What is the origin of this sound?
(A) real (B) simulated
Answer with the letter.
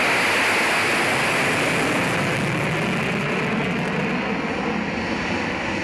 A